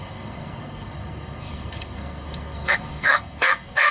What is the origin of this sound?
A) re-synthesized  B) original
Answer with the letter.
A